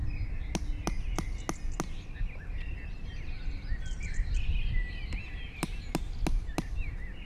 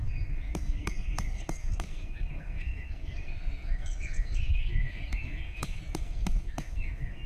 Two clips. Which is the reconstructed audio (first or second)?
second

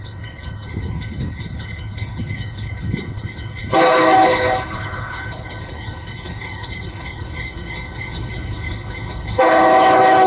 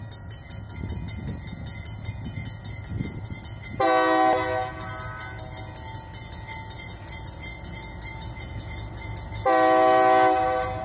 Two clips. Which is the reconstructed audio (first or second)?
first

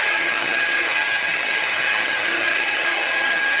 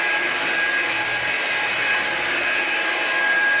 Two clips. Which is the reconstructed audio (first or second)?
first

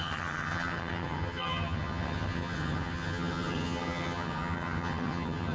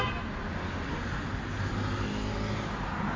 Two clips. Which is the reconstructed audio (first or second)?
first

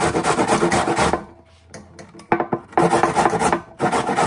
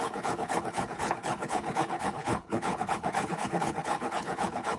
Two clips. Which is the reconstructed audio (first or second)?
second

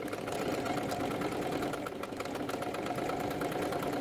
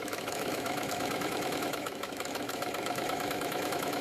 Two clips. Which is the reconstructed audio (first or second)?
second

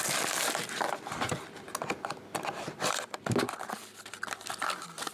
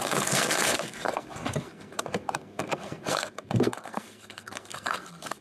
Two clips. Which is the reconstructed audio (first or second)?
second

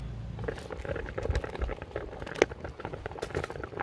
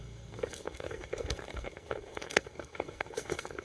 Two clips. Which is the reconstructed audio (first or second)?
second